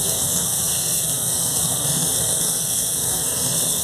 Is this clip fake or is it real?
fake